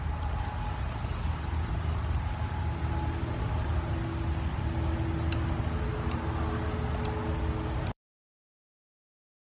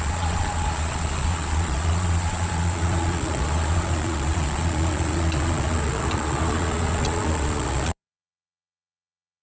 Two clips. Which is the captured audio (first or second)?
first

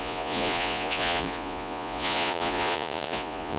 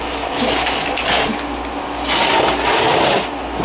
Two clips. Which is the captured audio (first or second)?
second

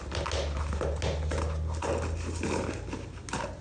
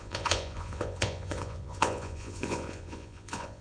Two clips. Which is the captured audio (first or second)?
first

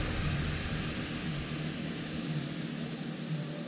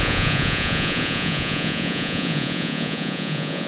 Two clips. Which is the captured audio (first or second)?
first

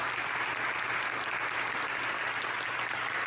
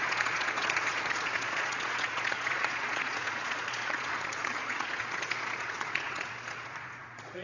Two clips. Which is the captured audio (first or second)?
first